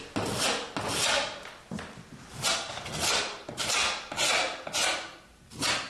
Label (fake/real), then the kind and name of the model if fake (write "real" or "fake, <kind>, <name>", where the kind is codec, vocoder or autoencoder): real